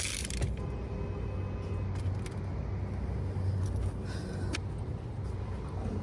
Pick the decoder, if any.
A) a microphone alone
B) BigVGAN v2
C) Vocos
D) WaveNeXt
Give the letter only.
A